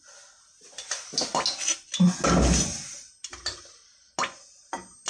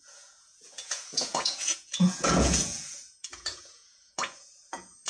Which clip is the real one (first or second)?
first